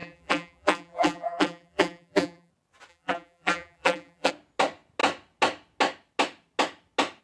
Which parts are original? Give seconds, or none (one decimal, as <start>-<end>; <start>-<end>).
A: 2.5-2.9; 4.3-7.2